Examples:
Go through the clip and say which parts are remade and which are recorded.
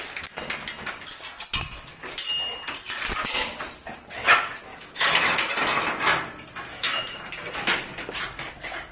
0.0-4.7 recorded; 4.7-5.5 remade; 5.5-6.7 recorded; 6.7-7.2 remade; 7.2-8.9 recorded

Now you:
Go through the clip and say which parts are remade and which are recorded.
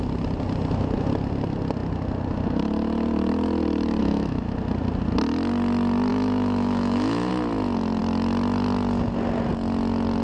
0.0-4.0 recorded; 4.0-4.5 remade; 4.5-6.1 recorded; 6.1-7.3 remade; 7.3-10.2 recorded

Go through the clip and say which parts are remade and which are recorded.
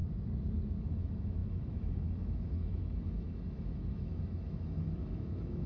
0.0-0.8 recorded; 0.8-5.7 remade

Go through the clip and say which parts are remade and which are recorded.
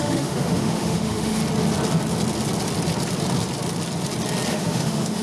0.0-1.4 remade; 1.4-4.5 recorded; 4.5-5.2 remade